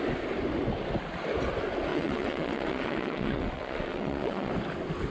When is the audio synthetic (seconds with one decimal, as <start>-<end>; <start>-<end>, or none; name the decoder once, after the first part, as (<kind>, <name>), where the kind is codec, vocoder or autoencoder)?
1.9-4.5 (vocoder, WaveNeXt)